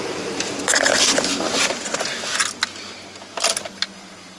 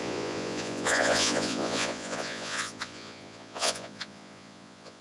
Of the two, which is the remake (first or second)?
second